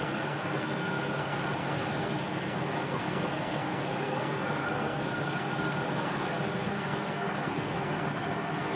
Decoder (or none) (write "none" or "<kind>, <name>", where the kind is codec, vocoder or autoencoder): codec, SNAC